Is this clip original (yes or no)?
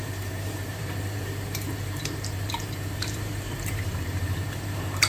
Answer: no